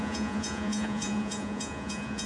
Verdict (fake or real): fake